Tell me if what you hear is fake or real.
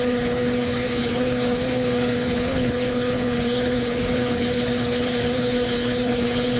fake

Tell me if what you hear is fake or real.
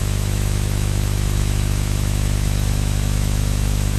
fake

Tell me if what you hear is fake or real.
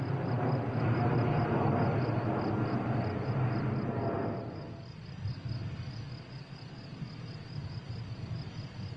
real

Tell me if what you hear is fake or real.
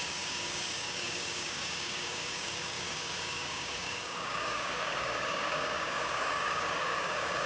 fake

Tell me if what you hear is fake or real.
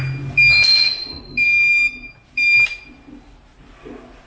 real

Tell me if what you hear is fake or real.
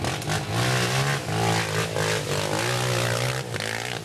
real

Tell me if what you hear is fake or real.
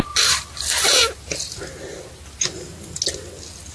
real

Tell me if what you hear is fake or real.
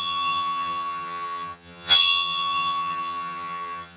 fake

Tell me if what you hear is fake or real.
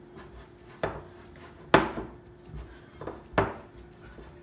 real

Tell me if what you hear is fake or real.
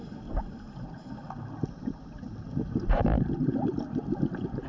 real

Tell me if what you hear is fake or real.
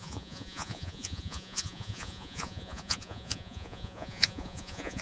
fake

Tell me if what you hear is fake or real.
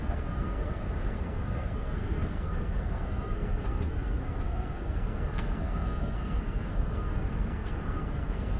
fake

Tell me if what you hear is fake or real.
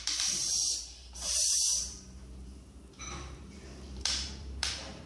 fake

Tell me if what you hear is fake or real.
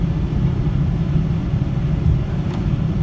real